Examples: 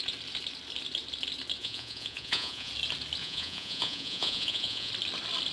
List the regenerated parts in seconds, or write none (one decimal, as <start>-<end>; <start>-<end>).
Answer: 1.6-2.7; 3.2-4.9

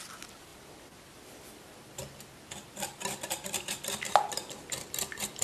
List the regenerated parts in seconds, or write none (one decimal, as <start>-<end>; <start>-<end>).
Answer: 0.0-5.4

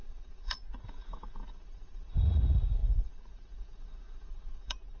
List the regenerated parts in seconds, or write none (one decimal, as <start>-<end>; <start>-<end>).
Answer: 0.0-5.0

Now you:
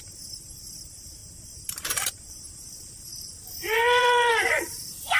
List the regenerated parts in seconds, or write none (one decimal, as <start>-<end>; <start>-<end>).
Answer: 0.0-1.2; 2.5-3.1; 4.0-5.2

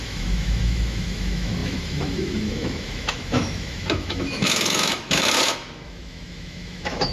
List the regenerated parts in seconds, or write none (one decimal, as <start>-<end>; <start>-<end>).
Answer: 0.0-7.1

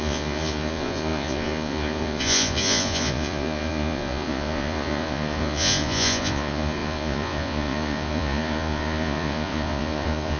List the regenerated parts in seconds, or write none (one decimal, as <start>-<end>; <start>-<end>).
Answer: 0.0-10.4

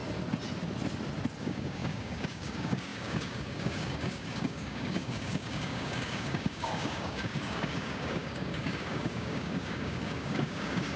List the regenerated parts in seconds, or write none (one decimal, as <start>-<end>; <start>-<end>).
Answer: 1.4-11.0

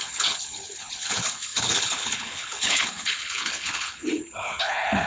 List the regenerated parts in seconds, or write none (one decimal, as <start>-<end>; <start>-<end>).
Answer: 0.0-5.1